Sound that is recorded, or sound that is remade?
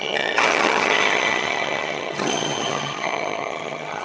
remade